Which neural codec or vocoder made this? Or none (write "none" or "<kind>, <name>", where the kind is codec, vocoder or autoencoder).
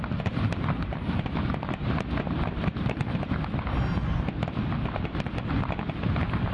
none